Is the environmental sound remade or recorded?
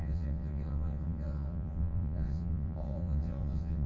remade